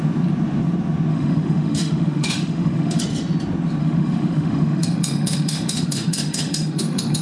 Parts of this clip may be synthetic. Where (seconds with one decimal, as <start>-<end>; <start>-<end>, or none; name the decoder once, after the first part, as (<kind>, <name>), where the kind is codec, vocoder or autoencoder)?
1.1-3.0 (autoencoder, DAC-VAE); 3.8-7.2